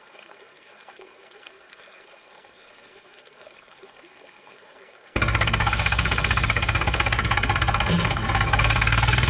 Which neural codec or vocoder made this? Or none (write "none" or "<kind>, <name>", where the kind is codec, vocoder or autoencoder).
codec, SNAC